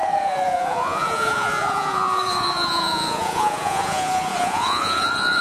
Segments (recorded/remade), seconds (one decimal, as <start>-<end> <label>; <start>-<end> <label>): 0.0-5.4 remade

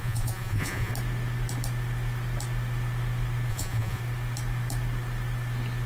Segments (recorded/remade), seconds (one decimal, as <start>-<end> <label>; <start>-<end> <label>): 0.0-0.9 remade; 0.9-3.5 recorded; 3.5-4.0 remade; 4.0-5.9 recorded